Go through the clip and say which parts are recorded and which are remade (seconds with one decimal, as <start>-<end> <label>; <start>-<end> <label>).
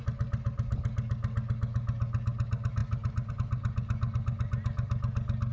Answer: 0.0-5.5 recorded